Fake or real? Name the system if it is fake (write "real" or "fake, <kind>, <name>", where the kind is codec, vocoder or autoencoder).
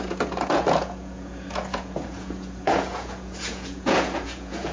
fake, vocoder, Vocos